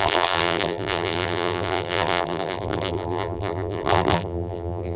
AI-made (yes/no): yes